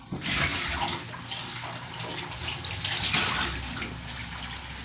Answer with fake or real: real